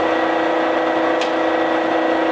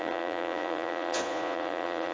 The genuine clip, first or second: first